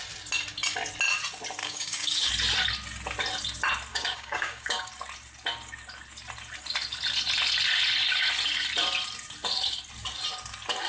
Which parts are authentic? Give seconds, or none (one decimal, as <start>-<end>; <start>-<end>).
0.0-1.6; 2.3-3.9; 4.9-10.9